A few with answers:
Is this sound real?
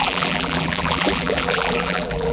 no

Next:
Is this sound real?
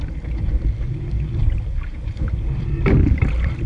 yes